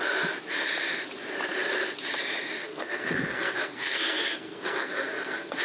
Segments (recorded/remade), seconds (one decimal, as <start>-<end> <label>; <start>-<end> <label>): 0.0-2.6 recorded; 2.6-5.6 remade